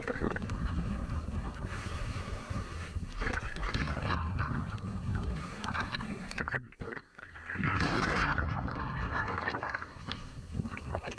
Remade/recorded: remade